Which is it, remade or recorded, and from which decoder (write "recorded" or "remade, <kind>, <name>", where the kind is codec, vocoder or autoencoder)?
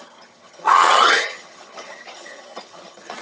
remade, vocoder, HiFi-GAN